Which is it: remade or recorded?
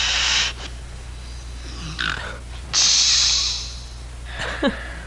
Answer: recorded